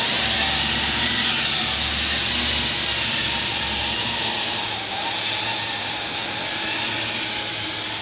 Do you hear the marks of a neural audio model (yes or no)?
no